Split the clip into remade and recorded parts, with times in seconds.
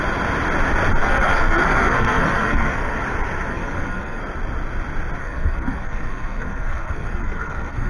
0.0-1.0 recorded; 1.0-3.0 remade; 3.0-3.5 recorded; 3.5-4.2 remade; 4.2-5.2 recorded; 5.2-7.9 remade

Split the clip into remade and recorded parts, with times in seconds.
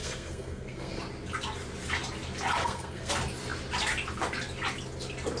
0.0-1.0 remade; 1.0-2.6 recorded; 2.6-3.1 remade; 3.1-5.4 recorded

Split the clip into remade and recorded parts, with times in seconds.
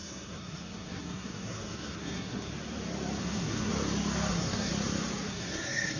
0.0-2.5 remade; 2.5-3.2 recorded; 3.2-3.7 remade; 3.7-4.3 recorded; 4.3-4.7 remade; 4.7-5.3 recorded; 5.3-6.0 remade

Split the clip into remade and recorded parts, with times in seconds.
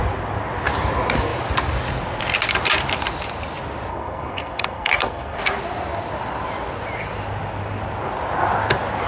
0.0-3.9 recorded; 3.9-5.4 remade; 5.4-9.1 recorded